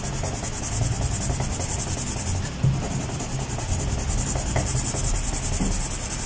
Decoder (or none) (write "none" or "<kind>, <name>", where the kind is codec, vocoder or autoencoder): none